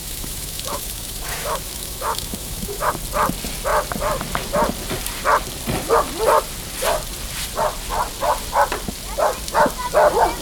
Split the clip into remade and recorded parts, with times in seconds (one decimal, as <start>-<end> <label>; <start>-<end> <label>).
0.0-2.9 remade; 2.9-10.4 recorded